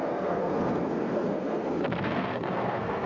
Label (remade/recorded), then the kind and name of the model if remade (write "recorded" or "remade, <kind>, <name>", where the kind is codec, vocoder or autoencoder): remade, codec, SNAC